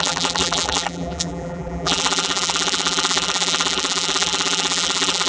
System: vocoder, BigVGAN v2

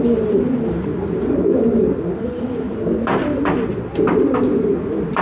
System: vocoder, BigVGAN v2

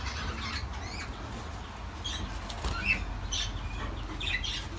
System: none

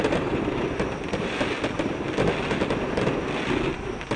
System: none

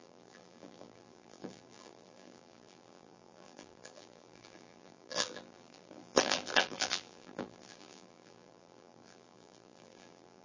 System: vocoder, BigVGAN v2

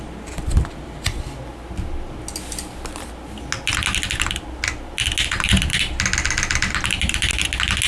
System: none